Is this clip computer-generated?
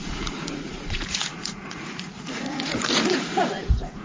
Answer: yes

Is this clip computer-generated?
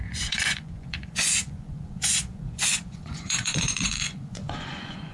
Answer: yes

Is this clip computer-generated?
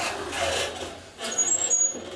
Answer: no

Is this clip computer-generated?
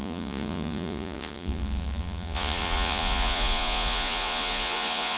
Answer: yes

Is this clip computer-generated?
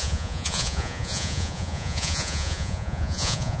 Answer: yes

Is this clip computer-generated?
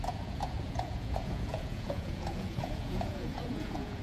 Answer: yes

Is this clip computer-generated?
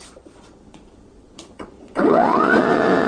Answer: yes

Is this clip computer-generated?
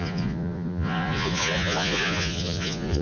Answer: yes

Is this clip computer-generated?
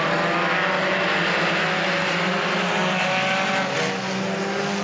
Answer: no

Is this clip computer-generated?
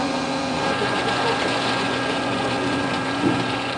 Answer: yes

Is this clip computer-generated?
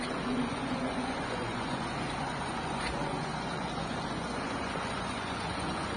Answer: yes